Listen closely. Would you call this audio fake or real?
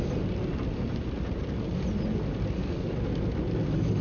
real